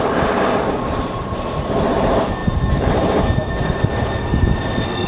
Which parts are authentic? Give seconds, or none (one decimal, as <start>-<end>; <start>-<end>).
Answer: 0.0-2.4; 3.2-5.1